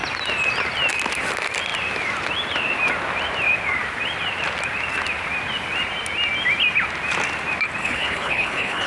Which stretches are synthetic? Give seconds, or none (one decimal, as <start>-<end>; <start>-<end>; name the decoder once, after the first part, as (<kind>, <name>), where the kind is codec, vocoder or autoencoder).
7.8-8.9 (codec, HILCodec)